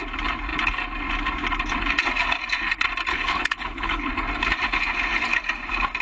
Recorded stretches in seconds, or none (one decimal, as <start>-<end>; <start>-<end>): 0.0-3.1; 4.1-6.0